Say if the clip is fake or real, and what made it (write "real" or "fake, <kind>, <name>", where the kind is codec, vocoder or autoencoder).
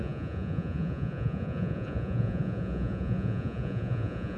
fake, vocoder, Vocos